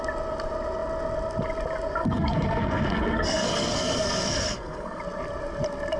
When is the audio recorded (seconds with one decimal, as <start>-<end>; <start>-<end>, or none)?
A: 0.0-2.0; 5.0-6.0